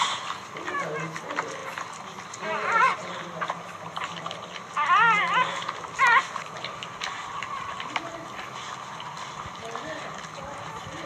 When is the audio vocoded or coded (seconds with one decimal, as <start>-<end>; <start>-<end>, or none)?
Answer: none